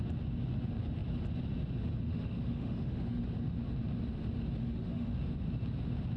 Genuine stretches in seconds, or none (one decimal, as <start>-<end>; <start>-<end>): 0.0-2.1; 3.2-4.6; 5.2-6.2